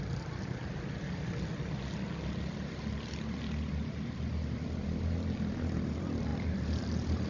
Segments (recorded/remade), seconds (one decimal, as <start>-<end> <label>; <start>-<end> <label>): 0.0-7.3 recorded